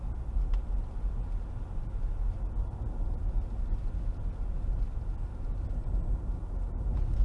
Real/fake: real